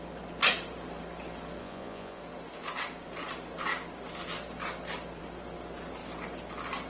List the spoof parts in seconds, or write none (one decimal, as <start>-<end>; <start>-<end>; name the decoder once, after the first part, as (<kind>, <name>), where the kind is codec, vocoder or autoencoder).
1.6-2.2 (vocoder, Vocos)